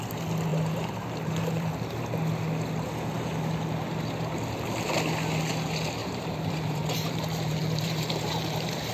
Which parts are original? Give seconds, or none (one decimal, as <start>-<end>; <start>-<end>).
0.0-0.5; 1.7-6.0